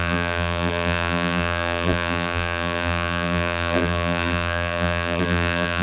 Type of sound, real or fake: fake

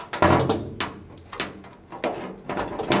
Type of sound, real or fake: real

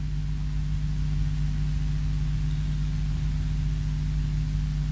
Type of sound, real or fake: real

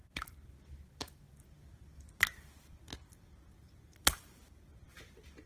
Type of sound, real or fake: fake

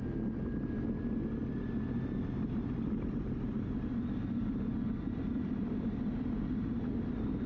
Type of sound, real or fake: real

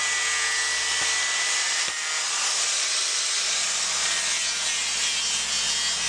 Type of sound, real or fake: real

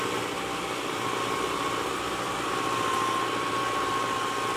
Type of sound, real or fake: real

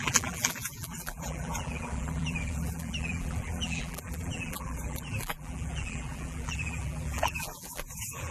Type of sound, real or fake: fake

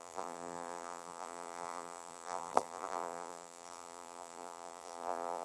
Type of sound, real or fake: fake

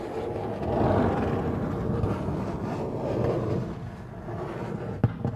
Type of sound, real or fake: real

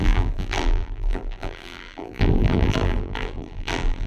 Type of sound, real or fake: fake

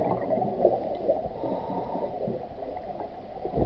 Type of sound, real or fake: fake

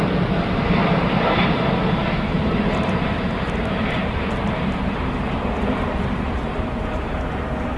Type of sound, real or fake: fake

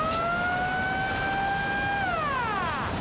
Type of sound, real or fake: real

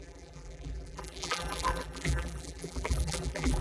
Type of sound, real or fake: fake